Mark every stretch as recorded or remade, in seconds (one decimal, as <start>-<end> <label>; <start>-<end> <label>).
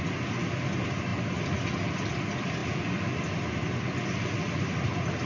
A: 0.0-5.3 recorded